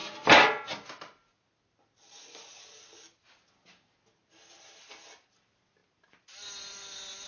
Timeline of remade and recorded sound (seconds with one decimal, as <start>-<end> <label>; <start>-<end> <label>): 0.0-7.3 recorded

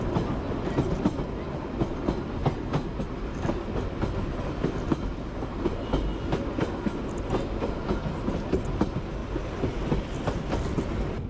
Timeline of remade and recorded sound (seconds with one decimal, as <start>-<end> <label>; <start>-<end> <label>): 0.0-11.3 recorded

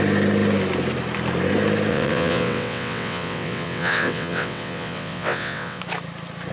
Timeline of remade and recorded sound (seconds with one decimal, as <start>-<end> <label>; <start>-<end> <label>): 0.0-1.9 recorded; 1.9-5.8 remade; 5.8-6.5 recorded

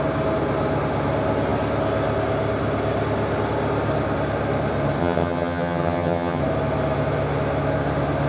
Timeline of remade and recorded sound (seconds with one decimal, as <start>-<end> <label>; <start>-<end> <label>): 0.0-5.0 recorded; 5.0-6.4 remade; 6.4-8.3 recorded

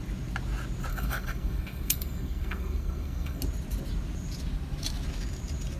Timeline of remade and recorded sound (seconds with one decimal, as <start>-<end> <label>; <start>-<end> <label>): 0.0-0.9 recorded; 0.9-3.4 remade; 3.4-5.8 recorded

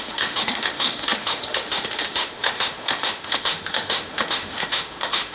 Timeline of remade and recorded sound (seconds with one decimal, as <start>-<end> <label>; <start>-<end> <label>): 0.0-5.3 remade

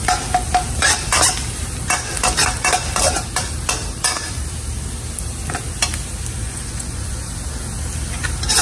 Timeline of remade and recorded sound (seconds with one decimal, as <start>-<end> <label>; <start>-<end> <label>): 0.0-6.4 recorded; 6.4-7.3 remade; 7.3-8.6 recorded

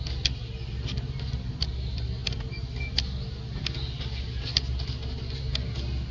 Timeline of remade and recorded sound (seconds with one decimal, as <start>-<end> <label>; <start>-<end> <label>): 0.0-6.1 recorded